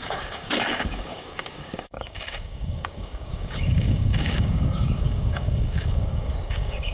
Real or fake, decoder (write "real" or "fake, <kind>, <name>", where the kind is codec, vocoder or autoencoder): fake, codec, DAC